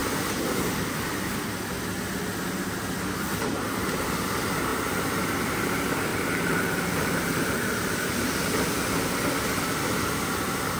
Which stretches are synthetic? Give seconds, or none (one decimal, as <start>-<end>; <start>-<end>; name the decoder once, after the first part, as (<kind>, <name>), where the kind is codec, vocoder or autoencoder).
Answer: 6.1-8.1 (vocoder, BigVGAN v2)